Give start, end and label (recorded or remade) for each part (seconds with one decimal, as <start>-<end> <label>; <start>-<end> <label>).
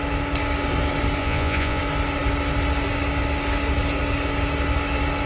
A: 0.0-1.2 recorded; 1.2-1.8 remade; 1.8-5.3 recorded